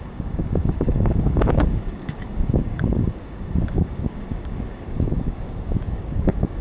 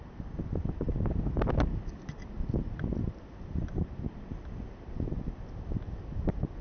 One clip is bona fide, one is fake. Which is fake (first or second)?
first